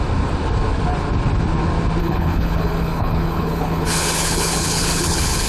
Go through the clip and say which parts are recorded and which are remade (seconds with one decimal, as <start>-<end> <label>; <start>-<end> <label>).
0.0-2.0 recorded; 2.0-5.5 remade